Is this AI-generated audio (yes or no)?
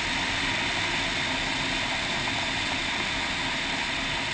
no